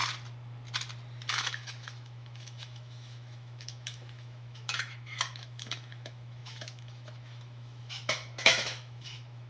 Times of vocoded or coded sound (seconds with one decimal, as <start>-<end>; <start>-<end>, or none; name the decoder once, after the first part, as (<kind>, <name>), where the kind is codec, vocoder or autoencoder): 1.3-9.5 (autoencoder, DAC-VAE)